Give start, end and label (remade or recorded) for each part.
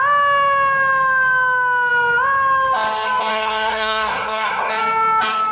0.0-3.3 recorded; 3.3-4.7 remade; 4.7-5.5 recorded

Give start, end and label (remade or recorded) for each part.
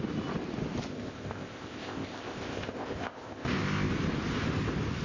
0.0-0.9 recorded; 0.9-3.9 remade; 3.9-5.0 recorded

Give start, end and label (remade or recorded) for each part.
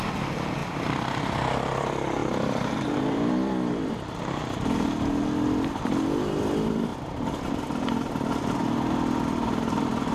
0.0-0.6 recorded; 0.6-1.2 remade; 1.2-2.2 recorded; 2.2-3.9 remade; 3.9-6.9 recorded; 6.9-8.1 remade; 8.1-10.1 recorded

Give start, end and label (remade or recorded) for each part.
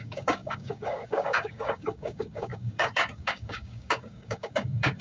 0.0-5.0 remade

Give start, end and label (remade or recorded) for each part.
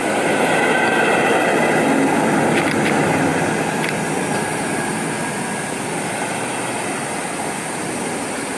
0.0-8.6 recorded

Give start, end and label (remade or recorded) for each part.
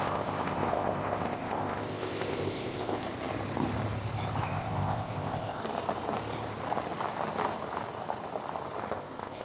0.0-3.0 remade; 3.0-4.4 recorded; 4.4-5.6 remade; 5.6-8.9 recorded; 8.9-9.4 remade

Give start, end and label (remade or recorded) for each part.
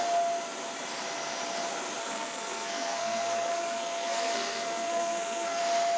0.0-2.0 recorded; 2.0-5.6 remade; 5.6-6.0 recorded